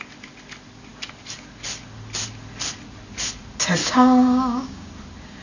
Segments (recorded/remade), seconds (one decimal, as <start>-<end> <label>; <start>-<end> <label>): 0.0-3.8 recorded; 3.8-4.9 remade; 4.9-5.4 recorded